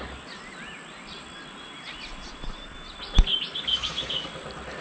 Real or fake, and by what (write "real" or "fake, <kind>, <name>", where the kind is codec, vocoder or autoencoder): real